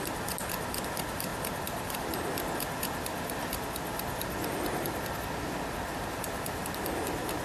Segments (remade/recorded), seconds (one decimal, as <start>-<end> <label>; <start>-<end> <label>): 0.0-7.4 recorded

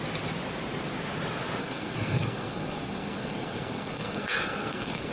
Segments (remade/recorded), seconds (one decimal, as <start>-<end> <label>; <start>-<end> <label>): 0.0-1.6 recorded; 1.6-5.1 remade

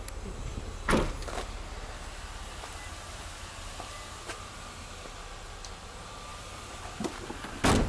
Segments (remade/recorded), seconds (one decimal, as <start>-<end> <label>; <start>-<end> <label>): 0.0-7.9 recorded

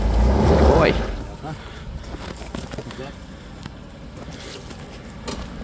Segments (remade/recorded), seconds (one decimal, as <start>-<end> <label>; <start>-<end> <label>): 0.0-5.6 recorded